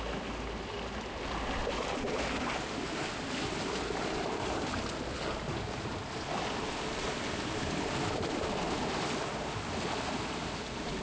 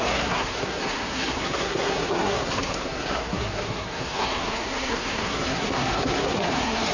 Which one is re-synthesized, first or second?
second